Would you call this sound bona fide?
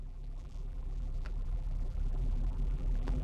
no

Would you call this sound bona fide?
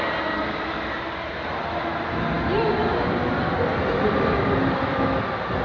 yes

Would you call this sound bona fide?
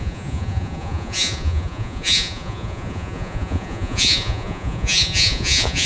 no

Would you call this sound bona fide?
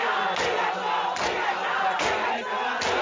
yes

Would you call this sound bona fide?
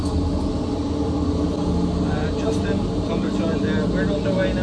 yes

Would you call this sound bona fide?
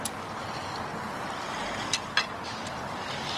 yes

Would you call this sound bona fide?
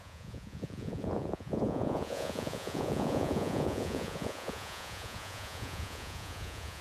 no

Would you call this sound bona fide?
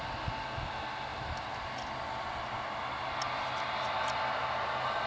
yes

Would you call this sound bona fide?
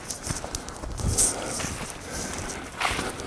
yes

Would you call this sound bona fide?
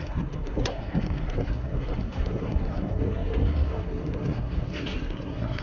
no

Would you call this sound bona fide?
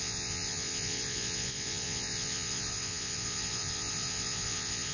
no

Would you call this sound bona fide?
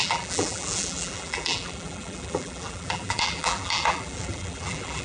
no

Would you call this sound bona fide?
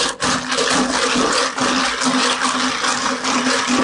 yes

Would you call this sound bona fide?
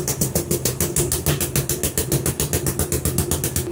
yes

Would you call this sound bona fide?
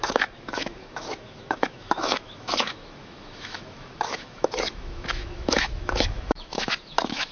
no